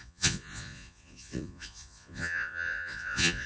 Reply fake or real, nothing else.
fake